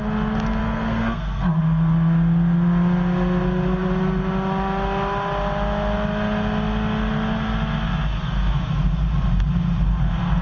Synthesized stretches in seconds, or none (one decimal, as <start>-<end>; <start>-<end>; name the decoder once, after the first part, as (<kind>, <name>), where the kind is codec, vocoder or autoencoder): 0.6-1.6 (codec, SNAC)